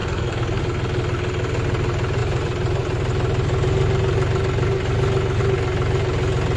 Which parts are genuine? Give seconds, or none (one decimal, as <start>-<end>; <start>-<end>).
0.6-6.6